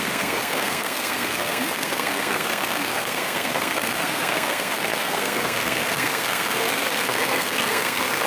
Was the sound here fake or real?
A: fake